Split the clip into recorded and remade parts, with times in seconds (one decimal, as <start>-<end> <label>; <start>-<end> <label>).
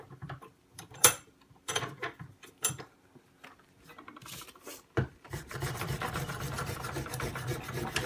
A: 0.0-3.9 remade; 3.9-4.4 recorded; 4.4-8.1 remade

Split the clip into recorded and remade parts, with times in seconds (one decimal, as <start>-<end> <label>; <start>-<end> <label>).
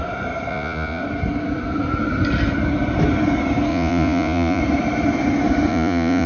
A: 0.0-0.5 recorded; 0.5-1.0 remade; 1.0-3.7 recorded; 3.7-4.6 remade; 4.6-5.7 recorded; 5.7-6.3 remade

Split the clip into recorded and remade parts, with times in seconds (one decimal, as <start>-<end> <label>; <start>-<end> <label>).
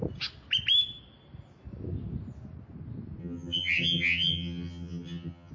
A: 0.0-3.2 recorded; 3.2-5.5 remade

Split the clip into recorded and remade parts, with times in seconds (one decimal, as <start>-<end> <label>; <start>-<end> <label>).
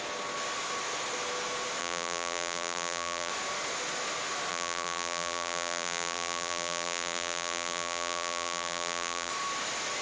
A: 0.0-1.8 recorded; 1.8-3.3 remade; 3.3-4.5 recorded; 4.5-9.3 remade; 9.3-10.0 recorded